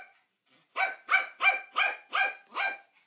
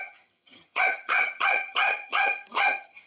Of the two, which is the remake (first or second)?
second